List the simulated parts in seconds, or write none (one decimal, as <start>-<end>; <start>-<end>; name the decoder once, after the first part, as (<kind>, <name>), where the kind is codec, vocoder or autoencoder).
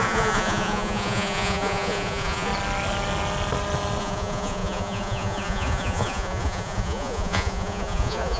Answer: 0.0-2.5 (vocoder, Vocos); 4.0-8.4